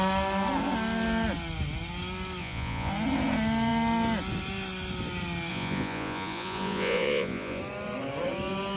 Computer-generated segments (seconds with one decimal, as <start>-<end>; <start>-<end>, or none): 2.4-2.9; 5.5-7.6

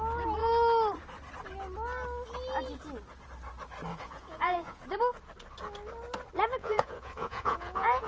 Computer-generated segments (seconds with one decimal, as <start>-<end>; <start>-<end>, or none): 3.9-4.8; 6.6-8.1